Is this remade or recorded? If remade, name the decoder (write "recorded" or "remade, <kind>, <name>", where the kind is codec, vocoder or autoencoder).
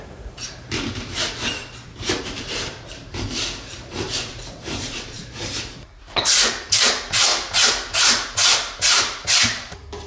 remade, vocoder, BigVGAN v2